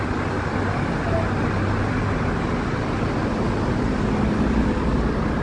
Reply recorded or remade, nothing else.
recorded